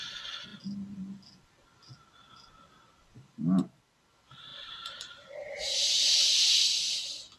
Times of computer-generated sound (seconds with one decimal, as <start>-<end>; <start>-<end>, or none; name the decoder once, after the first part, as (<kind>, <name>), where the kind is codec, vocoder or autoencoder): 4.5-6.8 (vocoder, BigVGAN v2)